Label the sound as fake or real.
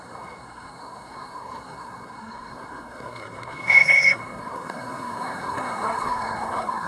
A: fake